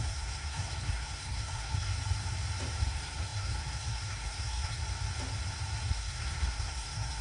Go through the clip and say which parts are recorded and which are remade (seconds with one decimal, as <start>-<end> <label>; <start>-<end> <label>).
0.0-1.9 remade; 1.9-2.8 recorded; 2.8-4.8 remade; 4.8-5.9 recorded; 5.9-7.2 remade